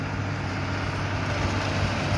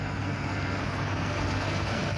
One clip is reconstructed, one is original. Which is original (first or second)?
first